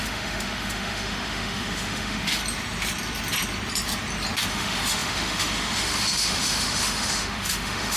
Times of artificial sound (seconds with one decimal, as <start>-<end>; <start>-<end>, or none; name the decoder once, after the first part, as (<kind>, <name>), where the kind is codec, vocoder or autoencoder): 0.0-2.4 (autoencoder, DAC-VAE); 4.5-8.0